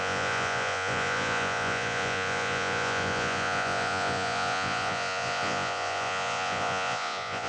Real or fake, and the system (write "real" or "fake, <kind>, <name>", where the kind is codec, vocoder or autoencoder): fake, vocoder, Vocos